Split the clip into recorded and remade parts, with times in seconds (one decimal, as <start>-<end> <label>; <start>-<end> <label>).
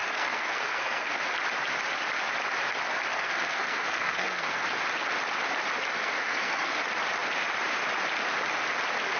0.0-1.2 remade; 1.2-3.1 recorded; 3.1-4.6 remade; 4.6-6.0 recorded; 6.0-6.8 remade; 6.8-9.2 recorded